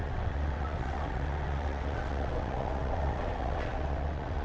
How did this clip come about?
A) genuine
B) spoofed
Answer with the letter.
B